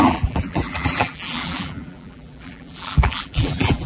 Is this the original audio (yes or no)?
no